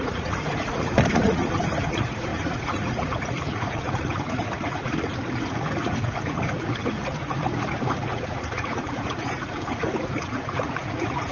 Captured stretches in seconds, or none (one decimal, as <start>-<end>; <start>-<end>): none